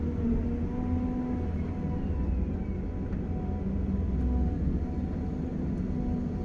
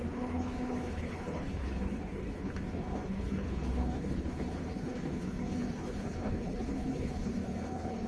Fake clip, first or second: second